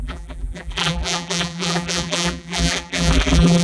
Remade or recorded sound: remade